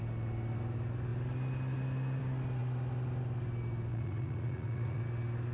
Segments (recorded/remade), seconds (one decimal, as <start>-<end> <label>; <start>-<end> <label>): 0.0-3.9 recorded; 3.9-5.0 remade; 5.0-5.5 recorded